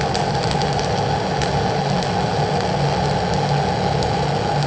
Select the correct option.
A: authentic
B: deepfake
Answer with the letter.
A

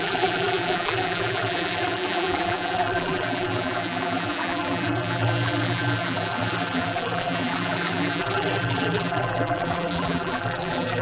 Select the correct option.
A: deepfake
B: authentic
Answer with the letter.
A